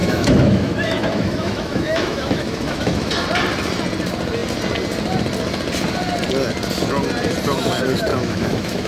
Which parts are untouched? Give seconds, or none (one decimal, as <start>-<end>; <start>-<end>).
3.1-8.1